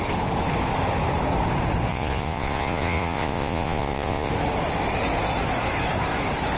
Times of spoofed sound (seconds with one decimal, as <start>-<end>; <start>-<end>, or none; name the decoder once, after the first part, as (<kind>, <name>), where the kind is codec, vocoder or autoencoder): 1.9-4.3 (vocoder, Vocos)